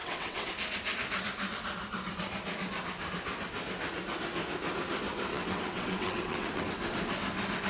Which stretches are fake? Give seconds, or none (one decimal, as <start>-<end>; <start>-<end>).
0.0-0.5; 5.3-6.6